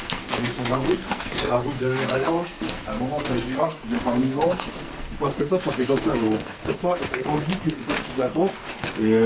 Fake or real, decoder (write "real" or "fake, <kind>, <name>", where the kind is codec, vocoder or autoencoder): fake, codec, SNAC